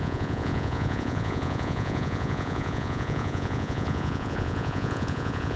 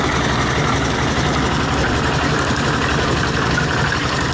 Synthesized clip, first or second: first